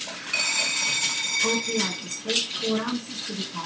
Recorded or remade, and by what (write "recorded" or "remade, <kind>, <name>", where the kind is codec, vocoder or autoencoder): recorded